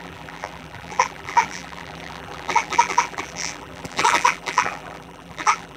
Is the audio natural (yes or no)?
no